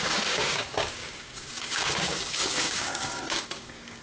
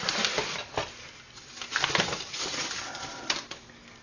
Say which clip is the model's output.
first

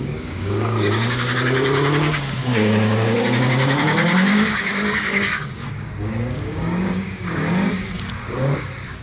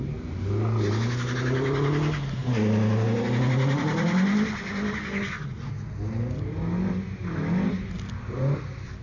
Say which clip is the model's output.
first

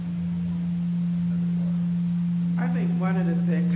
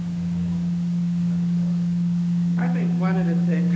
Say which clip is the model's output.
second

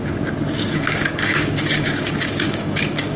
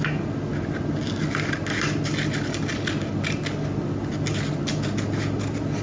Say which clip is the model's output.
first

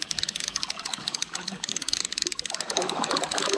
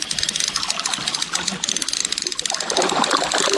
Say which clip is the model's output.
first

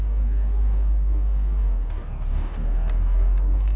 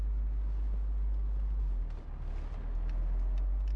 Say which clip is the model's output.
first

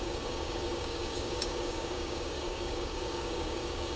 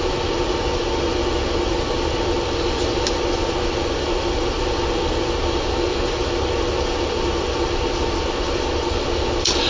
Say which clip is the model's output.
first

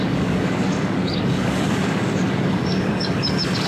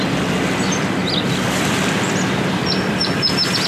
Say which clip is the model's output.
first